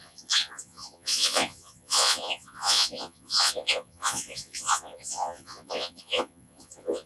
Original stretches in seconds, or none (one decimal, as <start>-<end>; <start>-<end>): none